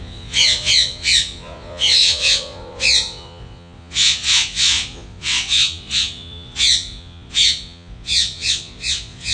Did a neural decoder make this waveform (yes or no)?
yes